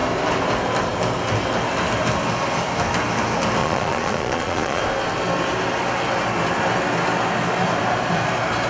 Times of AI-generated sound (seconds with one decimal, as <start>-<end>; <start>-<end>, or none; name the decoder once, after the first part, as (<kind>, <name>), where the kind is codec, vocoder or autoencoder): 3.6-4.8 (vocoder, Vocos)